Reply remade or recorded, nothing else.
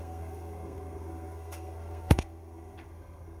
remade